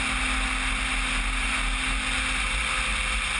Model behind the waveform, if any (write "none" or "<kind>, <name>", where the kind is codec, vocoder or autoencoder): none